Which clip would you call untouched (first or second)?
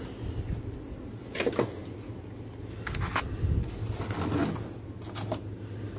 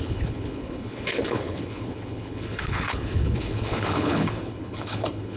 first